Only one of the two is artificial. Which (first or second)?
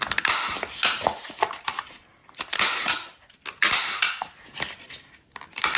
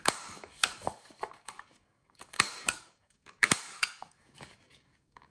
second